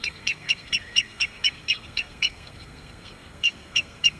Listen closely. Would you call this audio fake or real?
fake